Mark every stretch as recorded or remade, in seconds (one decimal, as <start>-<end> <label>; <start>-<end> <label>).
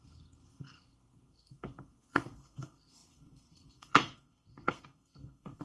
0.0-5.6 remade